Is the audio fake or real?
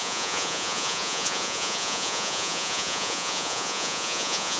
fake